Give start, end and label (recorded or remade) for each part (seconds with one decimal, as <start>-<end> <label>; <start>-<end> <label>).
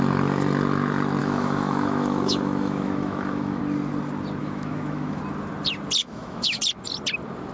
0.0-1.2 recorded; 1.2-3.6 remade; 3.6-4.4 recorded; 4.4-5.2 remade; 5.2-6.0 recorded; 6.0-6.6 remade; 6.6-7.5 recorded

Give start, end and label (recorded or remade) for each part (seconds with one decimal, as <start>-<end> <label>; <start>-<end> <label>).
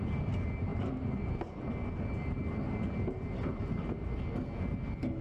0.0-5.2 recorded